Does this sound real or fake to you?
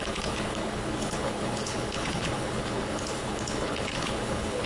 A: fake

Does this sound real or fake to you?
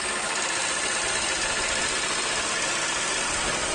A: real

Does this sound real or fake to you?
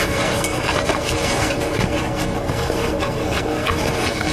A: fake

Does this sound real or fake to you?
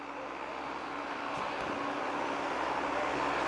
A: real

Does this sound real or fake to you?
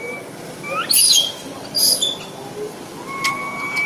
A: real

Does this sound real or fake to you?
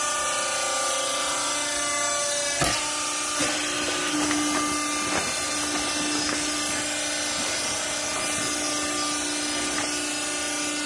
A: real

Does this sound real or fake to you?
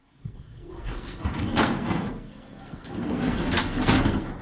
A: fake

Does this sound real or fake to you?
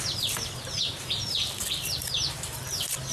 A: fake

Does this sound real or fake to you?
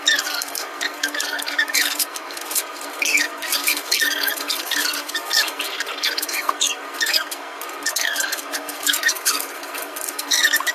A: fake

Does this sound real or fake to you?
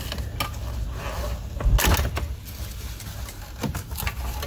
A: real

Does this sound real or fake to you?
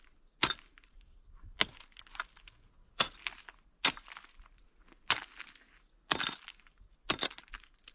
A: real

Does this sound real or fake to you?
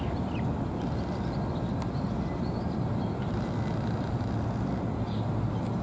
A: real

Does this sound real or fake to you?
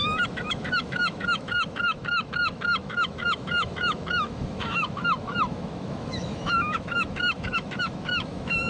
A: fake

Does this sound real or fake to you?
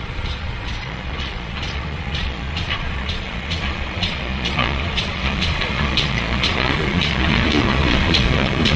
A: fake